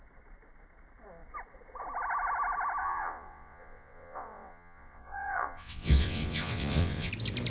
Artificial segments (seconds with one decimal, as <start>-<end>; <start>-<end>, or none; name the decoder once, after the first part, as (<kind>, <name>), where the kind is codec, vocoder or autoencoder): 2.8-7.1 (vocoder, WaveNeXt)